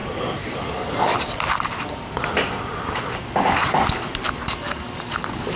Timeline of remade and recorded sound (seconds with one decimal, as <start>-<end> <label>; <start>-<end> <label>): 0.0-0.6 recorded; 0.6-1.1 remade; 1.1-4.5 recorded; 4.5-5.6 remade